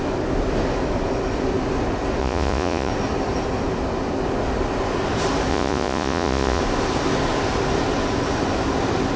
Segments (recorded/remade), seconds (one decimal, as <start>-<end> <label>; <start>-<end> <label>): 0.0-2.2 recorded; 2.2-2.9 remade; 2.9-5.5 recorded; 5.5-6.6 remade; 6.6-9.2 recorded